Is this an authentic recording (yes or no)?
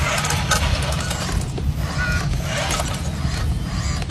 yes